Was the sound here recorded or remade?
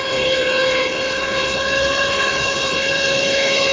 remade